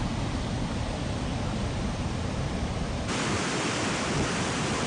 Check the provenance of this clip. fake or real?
real